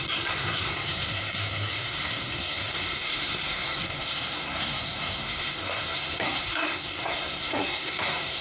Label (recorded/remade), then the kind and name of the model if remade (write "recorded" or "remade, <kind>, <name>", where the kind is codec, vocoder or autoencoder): remade, codec, SNAC